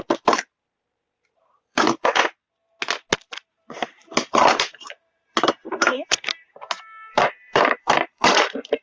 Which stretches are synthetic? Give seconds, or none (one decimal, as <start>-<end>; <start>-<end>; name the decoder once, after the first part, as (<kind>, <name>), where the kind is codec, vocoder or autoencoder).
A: 0.0-2.2 (vocoder, BigVGAN v2); 3.5-8.8